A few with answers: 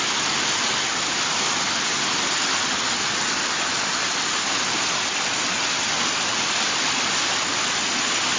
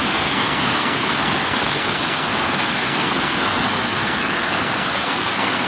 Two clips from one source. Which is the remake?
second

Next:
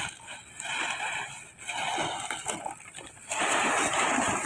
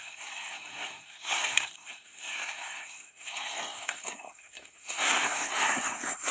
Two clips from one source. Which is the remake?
second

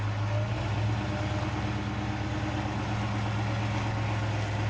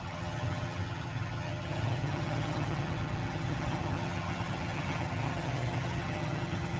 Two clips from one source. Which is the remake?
second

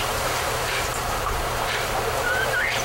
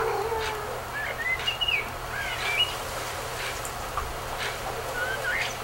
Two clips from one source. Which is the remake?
first